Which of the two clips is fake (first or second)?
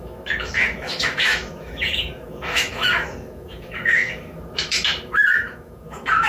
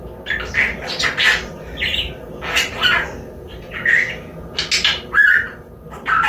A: first